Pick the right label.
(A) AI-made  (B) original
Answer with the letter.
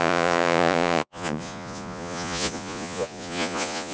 A